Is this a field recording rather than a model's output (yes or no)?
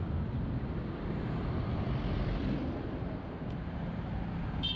no